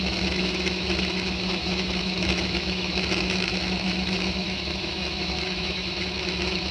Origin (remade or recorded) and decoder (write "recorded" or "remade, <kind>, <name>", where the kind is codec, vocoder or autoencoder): remade, autoencoder, DAC-VAE